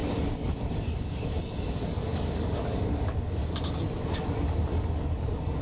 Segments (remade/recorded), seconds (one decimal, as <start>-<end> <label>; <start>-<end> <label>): 0.0-3.4 remade; 3.4-4.0 recorded; 4.0-5.6 remade